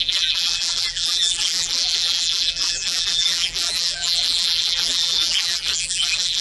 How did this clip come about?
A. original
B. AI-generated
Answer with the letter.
B